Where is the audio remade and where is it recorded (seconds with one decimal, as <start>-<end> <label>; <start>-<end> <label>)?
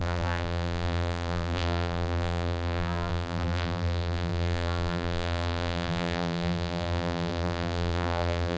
0.0-8.6 remade